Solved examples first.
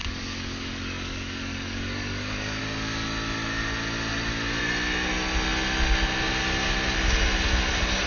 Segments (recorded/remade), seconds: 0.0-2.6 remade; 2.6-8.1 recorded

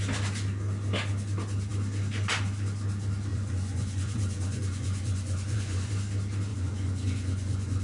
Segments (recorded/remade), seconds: 0.0-3.3 recorded; 3.3-5.9 remade; 5.9-6.5 recorded; 6.5-7.8 remade

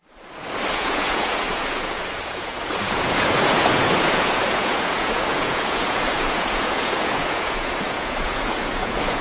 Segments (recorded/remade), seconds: 0.0-0.7 recorded; 0.7-9.2 remade

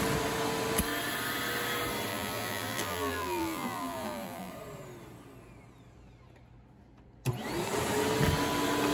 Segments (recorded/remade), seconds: 0.0-2.1 recorded; 2.1-4.5 remade; 4.5-8.9 recorded

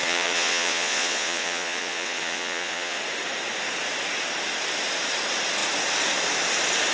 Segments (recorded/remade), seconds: 0.0-3.0 remade; 3.0-6.9 recorded

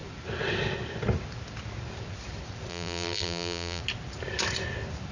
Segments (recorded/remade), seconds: 0.0-2.7 recorded; 2.7-3.8 remade; 3.8-5.1 recorded

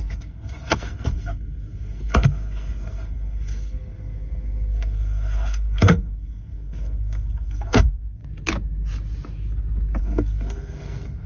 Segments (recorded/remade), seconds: 0.0-8.2 remade; 8.2-10.0 recorded; 10.0-11.3 remade